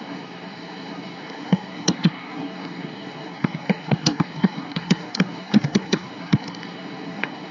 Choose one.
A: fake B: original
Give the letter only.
A